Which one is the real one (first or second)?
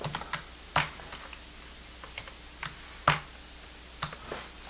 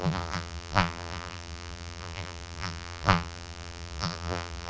first